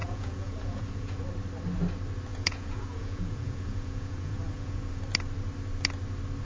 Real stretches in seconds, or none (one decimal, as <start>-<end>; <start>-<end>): 1.2-2.3; 5.0-6.4